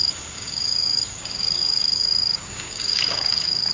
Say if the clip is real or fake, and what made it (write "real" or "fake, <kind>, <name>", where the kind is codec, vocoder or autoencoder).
fake, codec, DAC